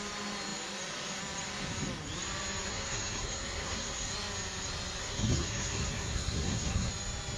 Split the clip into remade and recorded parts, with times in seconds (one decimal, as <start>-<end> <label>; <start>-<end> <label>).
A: 0.0-2.7 recorded; 2.7-4.1 remade; 4.1-5.0 recorded; 5.0-6.9 remade; 6.9-7.4 recorded